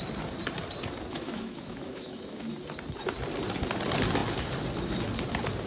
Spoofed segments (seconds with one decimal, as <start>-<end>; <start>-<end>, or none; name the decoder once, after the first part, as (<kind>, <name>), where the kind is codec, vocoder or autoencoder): 1.1-2.5 (autoencoder, DAC-VAE)